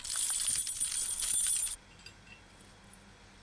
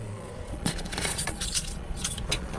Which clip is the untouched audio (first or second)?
first